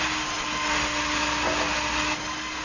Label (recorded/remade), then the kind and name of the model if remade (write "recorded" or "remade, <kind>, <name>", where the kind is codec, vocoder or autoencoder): recorded